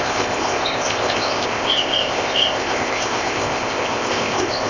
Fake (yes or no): yes